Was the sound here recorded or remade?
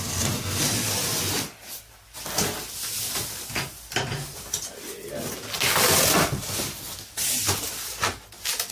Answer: recorded